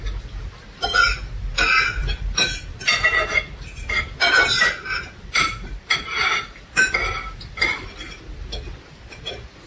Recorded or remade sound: recorded